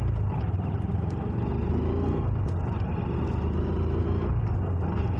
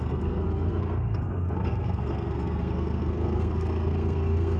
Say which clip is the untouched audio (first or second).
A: first